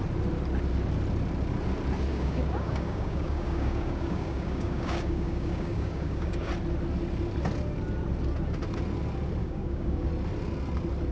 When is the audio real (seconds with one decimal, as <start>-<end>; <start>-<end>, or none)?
0.0-2.1; 6.5-9.4; 10.1-11.1